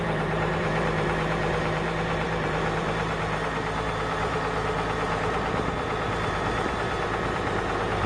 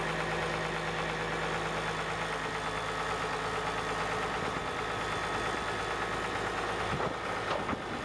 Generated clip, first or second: first